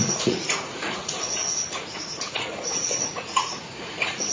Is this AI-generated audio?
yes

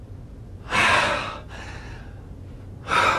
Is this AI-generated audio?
no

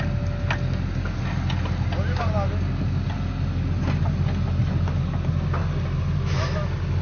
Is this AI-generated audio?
no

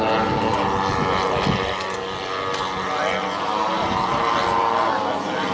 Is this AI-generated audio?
no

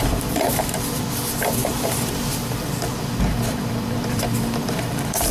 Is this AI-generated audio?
yes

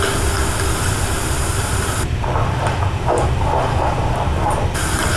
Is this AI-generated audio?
no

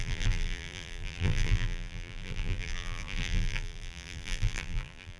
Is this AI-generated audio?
yes